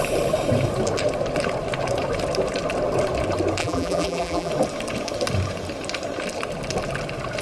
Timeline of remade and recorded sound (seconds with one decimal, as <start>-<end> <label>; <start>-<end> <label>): 0.0-3.6 recorded; 3.6-4.5 remade; 4.5-7.4 recorded